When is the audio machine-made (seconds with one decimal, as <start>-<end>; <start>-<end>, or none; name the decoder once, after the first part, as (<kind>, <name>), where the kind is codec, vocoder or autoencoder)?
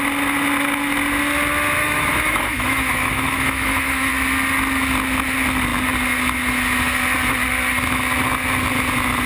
1.8-4.1 (autoencoder, DAC-VAE)